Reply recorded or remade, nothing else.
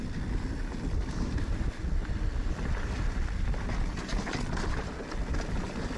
remade